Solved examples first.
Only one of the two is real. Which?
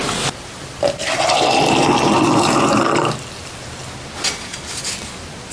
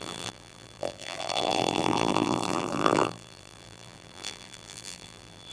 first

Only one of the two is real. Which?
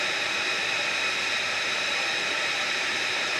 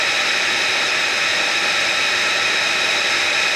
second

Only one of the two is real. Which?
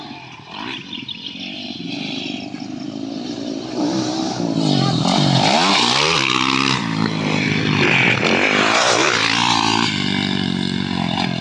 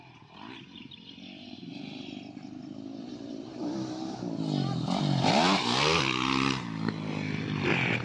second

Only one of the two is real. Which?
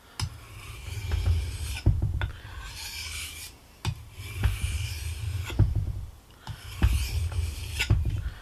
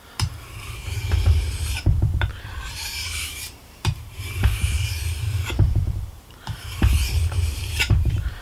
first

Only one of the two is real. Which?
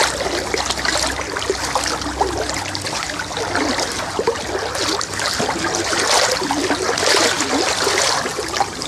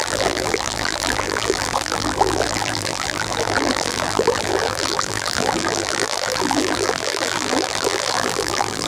first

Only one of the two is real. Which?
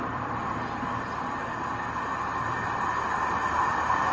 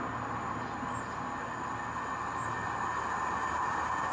second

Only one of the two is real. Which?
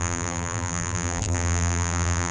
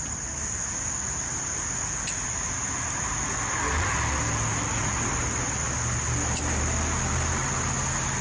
second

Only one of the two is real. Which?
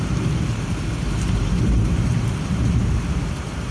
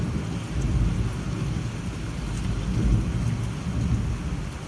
second